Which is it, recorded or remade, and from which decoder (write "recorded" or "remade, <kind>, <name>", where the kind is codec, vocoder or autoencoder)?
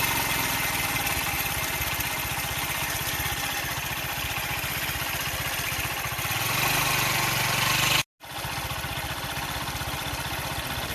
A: recorded